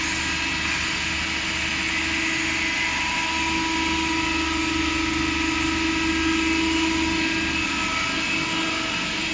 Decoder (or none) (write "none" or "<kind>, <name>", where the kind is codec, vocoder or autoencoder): none